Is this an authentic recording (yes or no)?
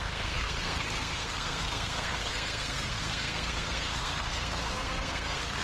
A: no